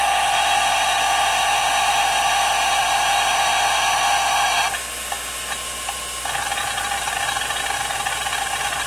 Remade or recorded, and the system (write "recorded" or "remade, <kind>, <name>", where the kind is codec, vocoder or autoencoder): recorded